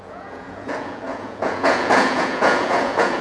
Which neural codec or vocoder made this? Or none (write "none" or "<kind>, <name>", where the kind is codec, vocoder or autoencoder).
vocoder, Vocos